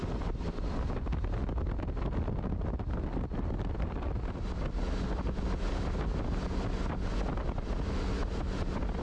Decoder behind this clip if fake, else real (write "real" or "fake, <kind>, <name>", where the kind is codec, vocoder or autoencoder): real